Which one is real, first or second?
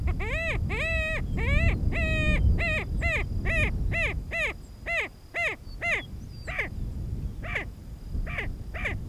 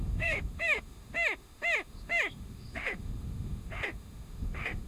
first